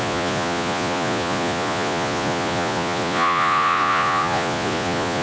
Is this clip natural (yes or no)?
no